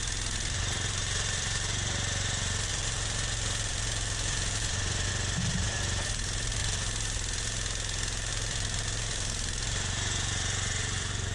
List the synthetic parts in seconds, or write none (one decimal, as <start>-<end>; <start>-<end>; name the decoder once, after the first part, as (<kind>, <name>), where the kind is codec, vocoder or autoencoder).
0.0-6.6 (vocoder, BigVGAN v2); 8.3-11.3